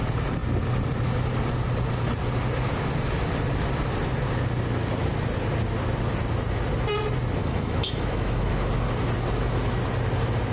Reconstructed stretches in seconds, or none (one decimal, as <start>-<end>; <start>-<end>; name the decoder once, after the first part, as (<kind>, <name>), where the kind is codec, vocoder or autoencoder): 7.4-8.5 (autoencoder, DAC-VAE)